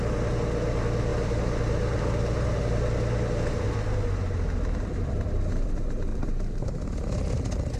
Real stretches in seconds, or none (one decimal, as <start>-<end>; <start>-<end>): 0.0-1.1; 2.6-6.1; 6.8-7.8